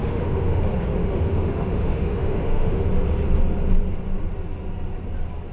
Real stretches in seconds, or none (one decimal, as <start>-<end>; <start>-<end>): 0.6-1.0; 2.9-5.5